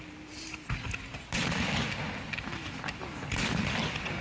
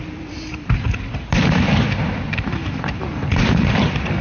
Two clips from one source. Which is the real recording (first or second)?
first